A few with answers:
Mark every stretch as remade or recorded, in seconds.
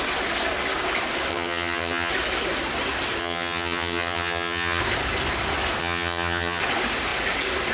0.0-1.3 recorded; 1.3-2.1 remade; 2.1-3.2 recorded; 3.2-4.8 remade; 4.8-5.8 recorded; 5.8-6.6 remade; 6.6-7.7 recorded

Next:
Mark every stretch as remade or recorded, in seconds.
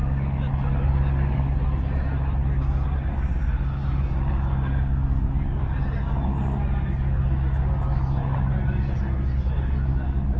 0.0-10.4 recorded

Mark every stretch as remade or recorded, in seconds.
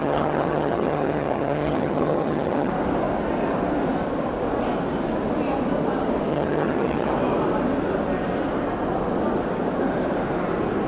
0.0-2.7 remade; 2.7-6.3 recorded; 6.3-7.1 remade; 7.1-10.9 recorded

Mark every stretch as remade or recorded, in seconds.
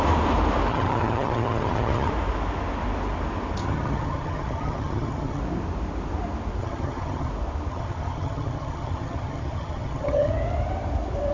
0.0-0.7 recorded; 0.7-2.1 remade; 2.1-3.6 recorded; 3.6-5.4 remade; 5.4-6.6 recorded; 6.6-7.3 remade; 7.3-7.7 recorded; 7.7-10.3 remade; 10.3-11.3 recorded